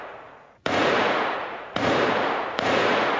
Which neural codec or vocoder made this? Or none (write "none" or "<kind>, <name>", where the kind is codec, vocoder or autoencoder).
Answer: vocoder, Vocos